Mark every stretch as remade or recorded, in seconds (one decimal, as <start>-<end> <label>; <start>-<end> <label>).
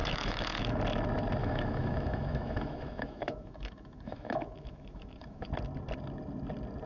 0.0-0.8 remade; 0.8-1.4 recorded; 1.4-5.5 remade; 5.5-6.9 recorded